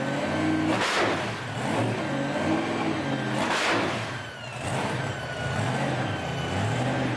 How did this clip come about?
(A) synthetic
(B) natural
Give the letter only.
B